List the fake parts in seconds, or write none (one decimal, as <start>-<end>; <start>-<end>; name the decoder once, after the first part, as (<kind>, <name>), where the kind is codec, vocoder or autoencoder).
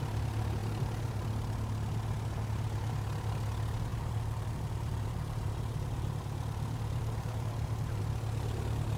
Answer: 3.9-8.0 (vocoder, BigVGAN v2)